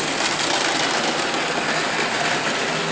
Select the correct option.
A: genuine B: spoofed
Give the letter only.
A